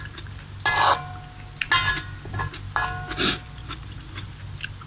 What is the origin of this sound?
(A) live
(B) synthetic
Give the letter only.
A